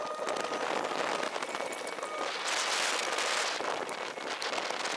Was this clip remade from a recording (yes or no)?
no